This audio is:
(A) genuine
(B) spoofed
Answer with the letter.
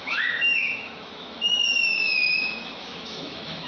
B